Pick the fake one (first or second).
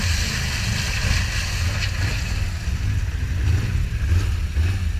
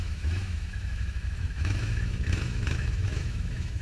second